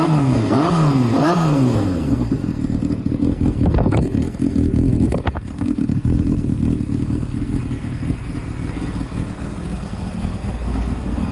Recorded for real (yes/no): no